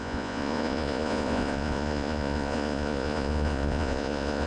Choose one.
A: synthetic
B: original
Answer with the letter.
A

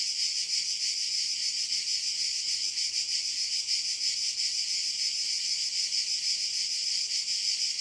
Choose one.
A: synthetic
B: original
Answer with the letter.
B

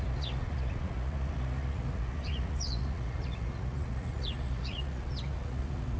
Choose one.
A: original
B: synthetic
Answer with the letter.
B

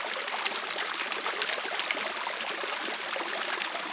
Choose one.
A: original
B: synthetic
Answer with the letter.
A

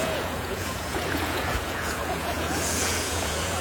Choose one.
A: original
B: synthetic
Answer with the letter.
B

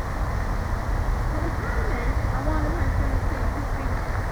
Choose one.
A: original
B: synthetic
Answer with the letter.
A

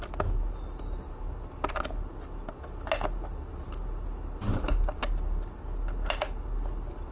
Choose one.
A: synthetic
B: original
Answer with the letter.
B